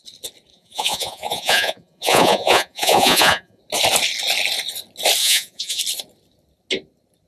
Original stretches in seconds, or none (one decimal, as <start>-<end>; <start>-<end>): 0.0-0.5; 3.6-5.2; 5.8-7.3

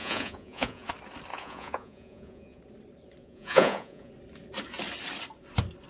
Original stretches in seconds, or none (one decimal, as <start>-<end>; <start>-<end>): 0.9-1.3; 2.6-3.2; 4.1-5.9